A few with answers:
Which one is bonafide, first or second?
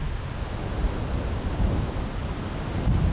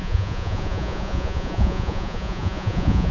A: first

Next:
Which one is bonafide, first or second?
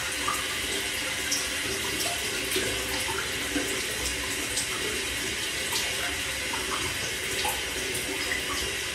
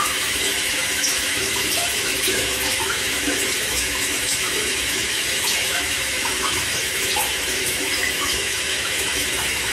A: first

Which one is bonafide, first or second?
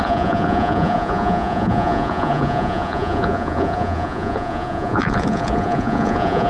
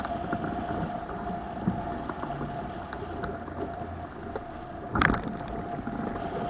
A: second